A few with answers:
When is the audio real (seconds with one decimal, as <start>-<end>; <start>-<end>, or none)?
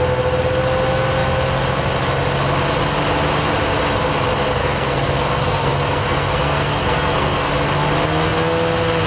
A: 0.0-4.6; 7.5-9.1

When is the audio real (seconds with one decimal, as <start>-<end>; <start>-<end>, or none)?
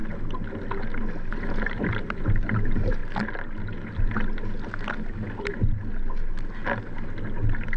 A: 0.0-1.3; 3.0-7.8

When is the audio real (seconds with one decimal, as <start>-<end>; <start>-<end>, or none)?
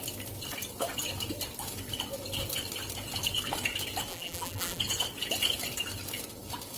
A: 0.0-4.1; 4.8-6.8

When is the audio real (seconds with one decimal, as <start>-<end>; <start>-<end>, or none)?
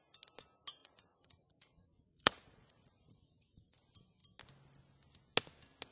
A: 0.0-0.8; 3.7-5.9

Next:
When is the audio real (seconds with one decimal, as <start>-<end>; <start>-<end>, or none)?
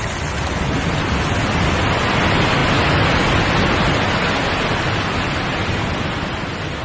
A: 0.0-6.8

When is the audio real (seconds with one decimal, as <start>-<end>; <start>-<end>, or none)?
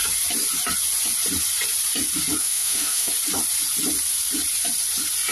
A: 0.0-2.4; 3.1-5.3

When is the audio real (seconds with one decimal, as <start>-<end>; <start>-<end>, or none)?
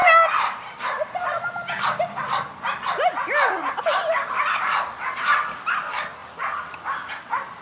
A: 0.0-7.6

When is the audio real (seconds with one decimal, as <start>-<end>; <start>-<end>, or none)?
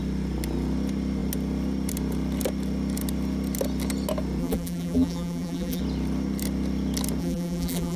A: 0.0-4.4; 5.8-7.2